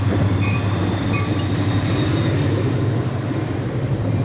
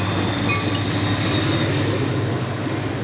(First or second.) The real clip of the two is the second